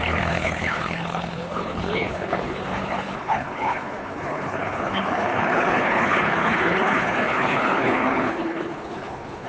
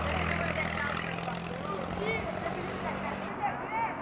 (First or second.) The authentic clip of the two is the second